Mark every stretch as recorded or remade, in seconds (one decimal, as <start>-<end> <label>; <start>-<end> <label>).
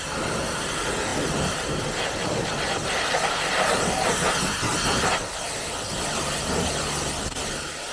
0.0-7.9 recorded